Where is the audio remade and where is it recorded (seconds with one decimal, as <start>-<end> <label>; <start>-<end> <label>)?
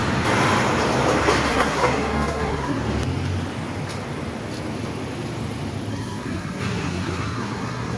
0.0-1.5 recorded; 1.5-2.8 remade; 2.8-5.9 recorded; 5.9-8.0 remade